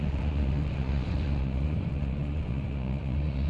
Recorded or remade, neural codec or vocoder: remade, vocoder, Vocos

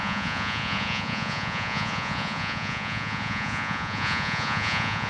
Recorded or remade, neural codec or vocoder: remade, vocoder, Vocos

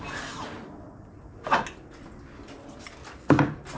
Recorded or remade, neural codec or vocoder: recorded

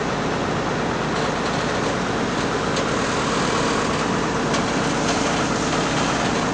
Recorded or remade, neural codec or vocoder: recorded